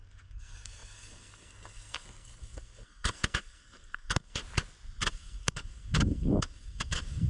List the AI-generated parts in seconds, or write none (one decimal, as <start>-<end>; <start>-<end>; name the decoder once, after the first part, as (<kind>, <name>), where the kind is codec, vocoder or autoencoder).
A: 0.0-4.4 (codec, SNAC); 5.1-7.3